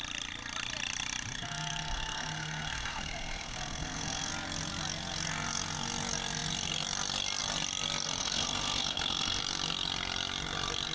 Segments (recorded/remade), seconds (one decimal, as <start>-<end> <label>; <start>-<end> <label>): 0.0-1.4 recorded; 1.4-4.3 remade; 4.3-8.2 recorded; 8.2-9.4 remade; 9.4-10.9 recorded